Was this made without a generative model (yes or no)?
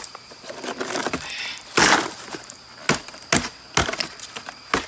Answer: yes